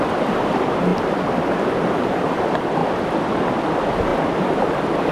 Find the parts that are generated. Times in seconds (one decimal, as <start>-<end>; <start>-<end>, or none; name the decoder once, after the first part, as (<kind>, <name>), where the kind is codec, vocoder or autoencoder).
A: none